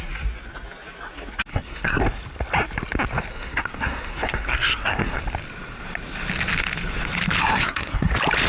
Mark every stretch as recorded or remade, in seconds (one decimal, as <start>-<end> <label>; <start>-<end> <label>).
0.0-1.5 recorded; 1.5-2.0 remade; 2.0-3.3 recorded; 3.3-5.2 remade; 5.2-7.4 recorded; 7.4-8.1 remade; 8.1-8.5 recorded